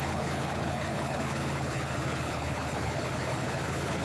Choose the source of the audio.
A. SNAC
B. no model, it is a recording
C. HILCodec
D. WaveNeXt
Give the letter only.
C